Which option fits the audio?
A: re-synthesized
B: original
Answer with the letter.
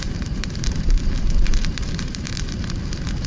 A